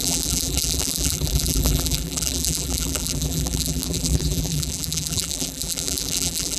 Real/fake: fake